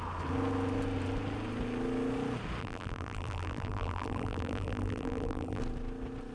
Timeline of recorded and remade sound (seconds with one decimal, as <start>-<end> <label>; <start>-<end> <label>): 0.0-2.6 recorded; 2.6-5.6 remade; 5.6-6.3 recorded